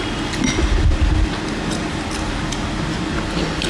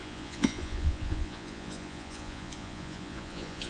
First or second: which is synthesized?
second